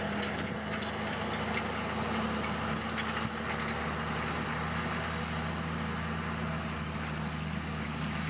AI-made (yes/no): no